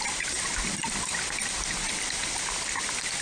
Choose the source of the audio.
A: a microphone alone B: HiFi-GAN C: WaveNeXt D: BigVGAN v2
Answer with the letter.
A